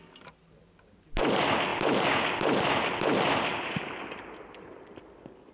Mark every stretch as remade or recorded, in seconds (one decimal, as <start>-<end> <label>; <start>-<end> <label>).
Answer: 0.0-5.5 recorded